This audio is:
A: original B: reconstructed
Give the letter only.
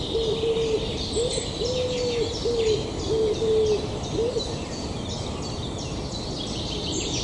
A